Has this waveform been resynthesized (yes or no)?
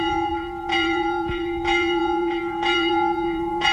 yes